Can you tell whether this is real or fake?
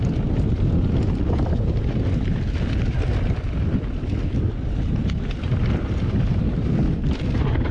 real